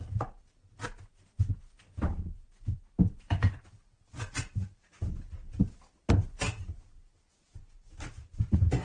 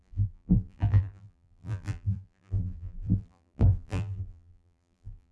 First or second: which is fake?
second